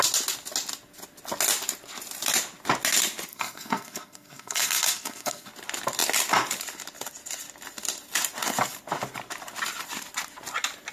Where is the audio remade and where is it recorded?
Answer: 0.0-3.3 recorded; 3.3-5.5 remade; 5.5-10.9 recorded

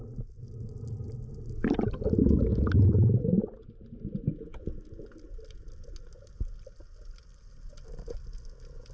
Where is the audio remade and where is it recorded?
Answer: 0.0-8.9 recorded

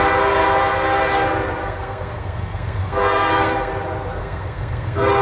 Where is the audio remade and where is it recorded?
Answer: 0.0-1.6 recorded; 1.6-3.7 remade; 3.7-4.2 recorded; 4.2-5.2 remade

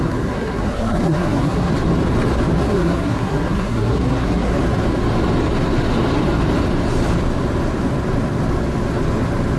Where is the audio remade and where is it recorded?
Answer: 0.0-1.7 remade; 1.7-2.6 recorded; 2.6-4.5 remade; 4.5-9.6 recorded

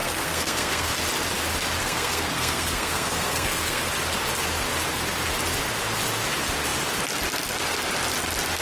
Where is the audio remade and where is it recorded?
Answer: 0.0-0.9 remade; 0.9-1.8 recorded; 1.8-3.9 remade; 3.9-8.6 recorded

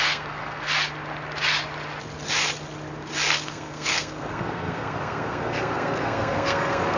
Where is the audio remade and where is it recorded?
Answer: 0.0-0.7 remade; 0.7-3.3 recorded; 3.3-7.0 remade

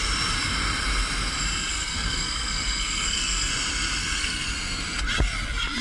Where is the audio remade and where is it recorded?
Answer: 0.0-1.7 recorded; 1.7-3.5 remade; 3.5-4.0 recorded; 4.0-4.5 remade; 4.5-5.8 recorded